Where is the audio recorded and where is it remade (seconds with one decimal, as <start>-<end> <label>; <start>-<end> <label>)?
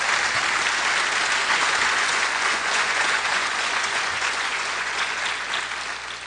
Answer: 0.0-1.4 recorded; 1.4-5.2 remade; 5.2-6.3 recorded